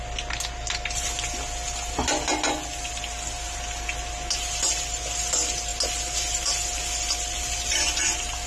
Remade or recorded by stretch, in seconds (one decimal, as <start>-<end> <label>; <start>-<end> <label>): 0.0-8.5 recorded